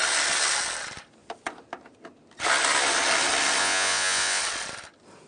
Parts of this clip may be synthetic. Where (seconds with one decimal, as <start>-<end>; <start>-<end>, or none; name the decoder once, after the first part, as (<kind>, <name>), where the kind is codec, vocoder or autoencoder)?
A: 3.6-4.4 (vocoder, Vocos)